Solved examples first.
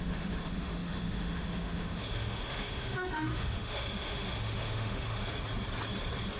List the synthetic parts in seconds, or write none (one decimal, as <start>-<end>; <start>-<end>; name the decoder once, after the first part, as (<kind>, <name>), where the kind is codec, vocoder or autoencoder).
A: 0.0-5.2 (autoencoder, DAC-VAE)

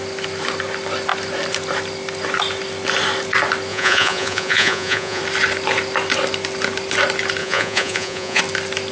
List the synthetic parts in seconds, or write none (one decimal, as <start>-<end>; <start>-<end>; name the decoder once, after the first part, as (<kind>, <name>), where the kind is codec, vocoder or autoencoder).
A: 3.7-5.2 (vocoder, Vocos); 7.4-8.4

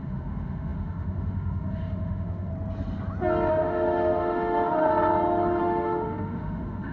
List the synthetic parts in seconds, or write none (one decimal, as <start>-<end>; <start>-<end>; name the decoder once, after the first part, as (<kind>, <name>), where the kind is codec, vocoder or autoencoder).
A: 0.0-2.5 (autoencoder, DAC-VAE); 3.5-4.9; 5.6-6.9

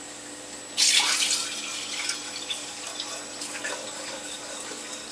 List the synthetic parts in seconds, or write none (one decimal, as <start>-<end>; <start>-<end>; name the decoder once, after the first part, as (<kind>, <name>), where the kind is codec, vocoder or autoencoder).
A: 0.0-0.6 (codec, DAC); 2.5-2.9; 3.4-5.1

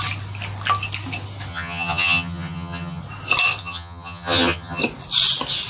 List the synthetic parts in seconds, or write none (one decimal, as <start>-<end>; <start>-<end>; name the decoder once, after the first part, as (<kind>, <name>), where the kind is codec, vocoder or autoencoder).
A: 1.5-3.0 (vocoder, HiFi-GAN); 3.6-4.8